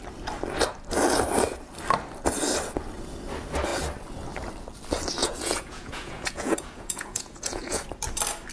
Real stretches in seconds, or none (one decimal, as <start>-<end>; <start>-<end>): 0.0-5.2; 7.8-8.5